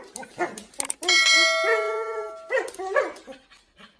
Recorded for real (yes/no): yes